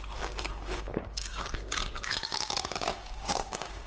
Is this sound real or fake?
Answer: fake